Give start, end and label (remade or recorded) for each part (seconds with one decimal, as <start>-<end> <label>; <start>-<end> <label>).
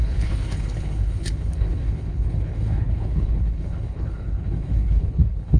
0.0-5.6 remade